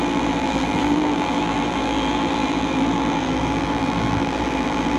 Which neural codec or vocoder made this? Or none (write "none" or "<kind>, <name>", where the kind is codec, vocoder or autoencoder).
vocoder, BigVGAN v2